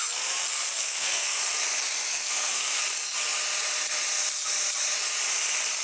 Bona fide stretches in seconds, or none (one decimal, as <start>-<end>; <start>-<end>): 0.0-0.8; 1.4-2.1; 2.8-5.8